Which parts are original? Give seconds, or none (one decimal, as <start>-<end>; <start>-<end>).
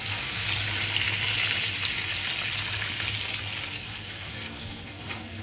0.5-3.7